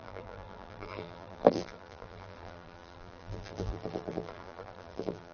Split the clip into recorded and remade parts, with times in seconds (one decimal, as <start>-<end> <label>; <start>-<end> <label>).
0.0-5.3 remade